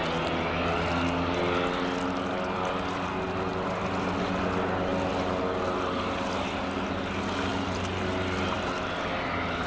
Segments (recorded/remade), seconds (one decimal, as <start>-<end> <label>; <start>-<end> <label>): 0.0-9.7 recorded